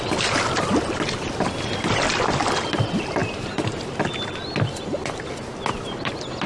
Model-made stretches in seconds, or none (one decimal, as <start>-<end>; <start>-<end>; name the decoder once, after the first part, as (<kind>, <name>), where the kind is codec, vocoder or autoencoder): 3.2-4.0 (vocoder, BigVGAN v2)